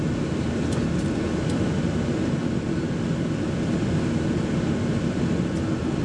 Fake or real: real